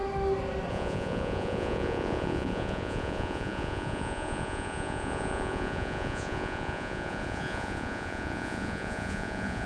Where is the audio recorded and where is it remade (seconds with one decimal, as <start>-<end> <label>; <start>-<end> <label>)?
0.0-0.7 recorded; 0.7-9.7 remade